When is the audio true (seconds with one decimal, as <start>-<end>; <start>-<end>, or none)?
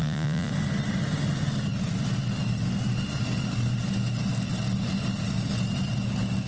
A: 0.5-6.5